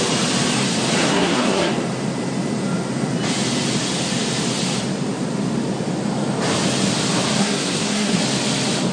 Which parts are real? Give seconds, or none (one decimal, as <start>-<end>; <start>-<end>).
0.0-1.0; 1.7-7.4; 8.2-8.9